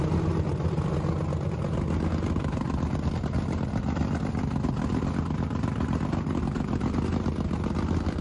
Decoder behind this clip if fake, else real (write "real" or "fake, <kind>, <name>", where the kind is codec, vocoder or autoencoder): real